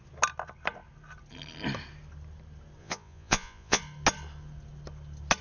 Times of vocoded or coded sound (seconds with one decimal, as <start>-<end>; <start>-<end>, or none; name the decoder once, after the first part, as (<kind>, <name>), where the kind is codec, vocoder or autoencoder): 2.8-3.8 (vocoder, Vocos)